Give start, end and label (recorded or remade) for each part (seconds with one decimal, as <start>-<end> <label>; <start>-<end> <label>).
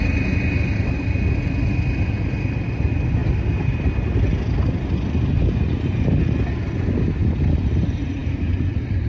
0.0-9.1 recorded